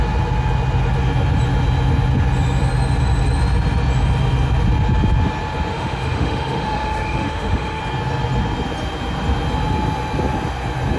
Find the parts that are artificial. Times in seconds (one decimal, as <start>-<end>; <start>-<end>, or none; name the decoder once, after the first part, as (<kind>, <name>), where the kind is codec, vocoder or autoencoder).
5.7-7.8 (autoencoder, DAC-VAE)